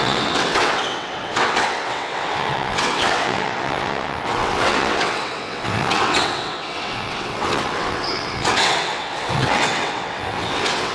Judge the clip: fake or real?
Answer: fake